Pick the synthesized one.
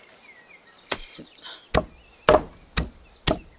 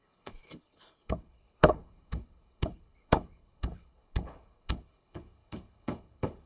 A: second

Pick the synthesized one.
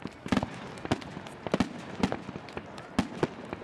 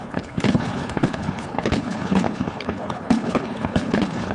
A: second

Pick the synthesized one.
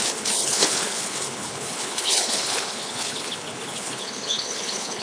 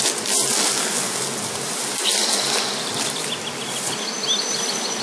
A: first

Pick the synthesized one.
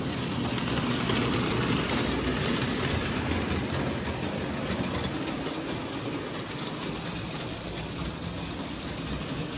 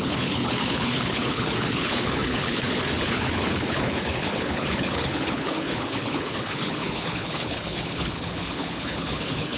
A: second